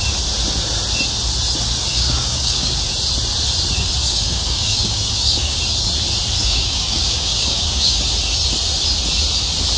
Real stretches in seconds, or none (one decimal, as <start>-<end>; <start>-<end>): 0.0-1.9; 2.7-4.0; 5.6-6.4; 8.1-9.8

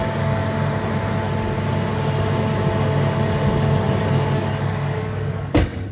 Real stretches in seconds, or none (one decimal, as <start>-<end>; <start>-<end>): 0.4-3.9

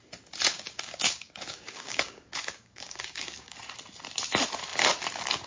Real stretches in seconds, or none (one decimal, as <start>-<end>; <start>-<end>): 0.0-0.5; 3.6-5.5